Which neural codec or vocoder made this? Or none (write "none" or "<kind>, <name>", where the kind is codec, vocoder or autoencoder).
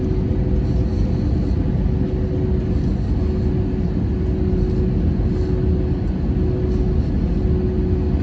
none